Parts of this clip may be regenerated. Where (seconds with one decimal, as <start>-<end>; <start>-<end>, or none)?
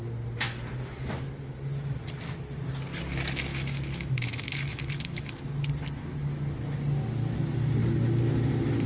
3.5-5.7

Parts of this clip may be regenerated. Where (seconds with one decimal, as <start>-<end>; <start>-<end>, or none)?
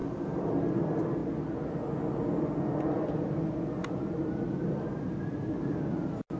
none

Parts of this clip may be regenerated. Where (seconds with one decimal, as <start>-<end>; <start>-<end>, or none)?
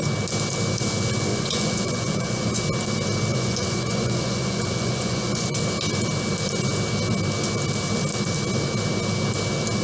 1.3-2.6; 3.3-5.6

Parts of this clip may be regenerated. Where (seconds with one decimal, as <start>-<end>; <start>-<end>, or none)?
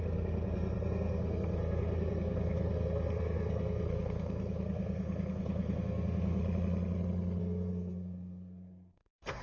0.0-6.4; 7.4-9.4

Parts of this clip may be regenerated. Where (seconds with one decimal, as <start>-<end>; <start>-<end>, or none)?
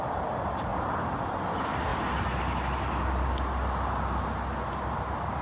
0.0-0.7; 1.5-1.9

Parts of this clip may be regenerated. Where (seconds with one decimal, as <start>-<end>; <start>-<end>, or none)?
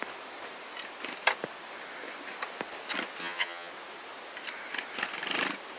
3.2-3.7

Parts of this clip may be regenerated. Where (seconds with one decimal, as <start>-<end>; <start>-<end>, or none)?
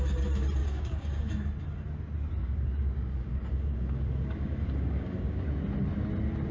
0.6-1.3; 2.4-5.4